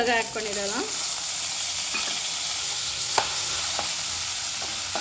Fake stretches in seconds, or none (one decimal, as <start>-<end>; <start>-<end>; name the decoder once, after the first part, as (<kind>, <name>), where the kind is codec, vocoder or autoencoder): 2.6-3.6 (codec, SNAC)